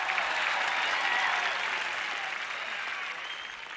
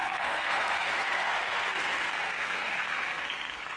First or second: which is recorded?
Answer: first